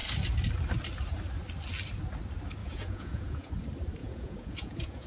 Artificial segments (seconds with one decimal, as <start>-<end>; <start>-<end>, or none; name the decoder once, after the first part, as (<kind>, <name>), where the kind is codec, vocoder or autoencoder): 2.6-3.5 (vocoder, Vocos); 4.0-5.1

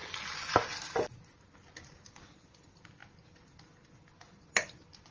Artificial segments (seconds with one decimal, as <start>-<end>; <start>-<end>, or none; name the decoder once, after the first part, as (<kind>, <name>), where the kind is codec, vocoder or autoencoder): none